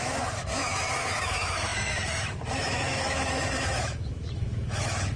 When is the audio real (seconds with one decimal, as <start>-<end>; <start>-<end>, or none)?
none